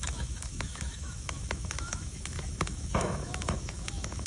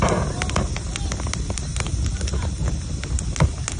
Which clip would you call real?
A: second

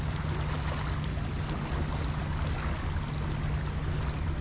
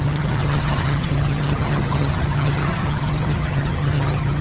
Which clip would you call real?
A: first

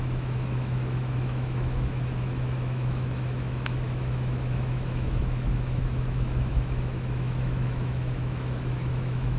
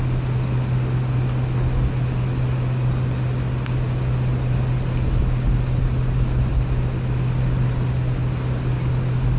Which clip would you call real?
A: second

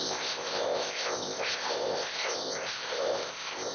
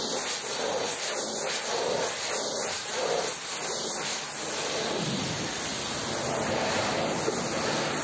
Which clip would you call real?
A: second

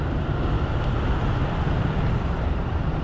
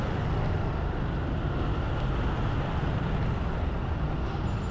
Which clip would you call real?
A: second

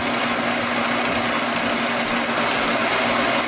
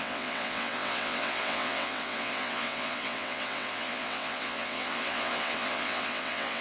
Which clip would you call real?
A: first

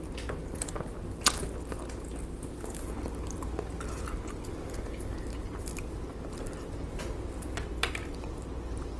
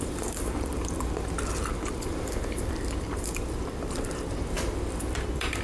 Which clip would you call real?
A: first